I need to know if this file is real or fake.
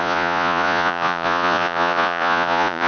fake